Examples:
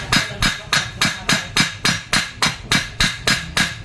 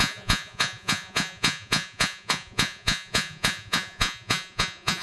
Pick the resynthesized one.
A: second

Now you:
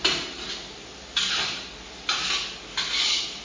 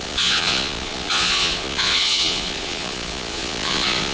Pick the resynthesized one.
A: second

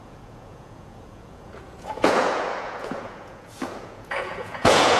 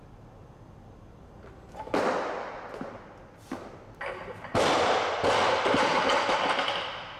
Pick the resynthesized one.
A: first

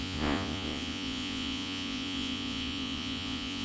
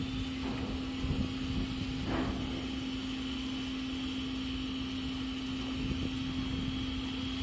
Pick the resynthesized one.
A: first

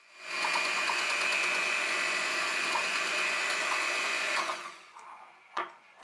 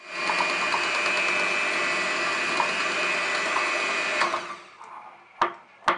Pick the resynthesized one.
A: first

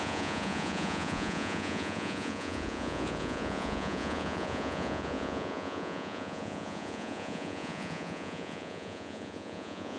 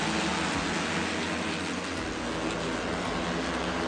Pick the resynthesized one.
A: first